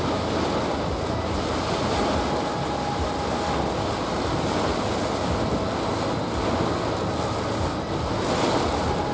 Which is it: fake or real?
real